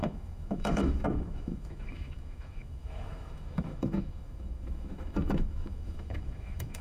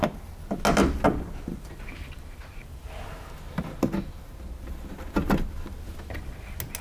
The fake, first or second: first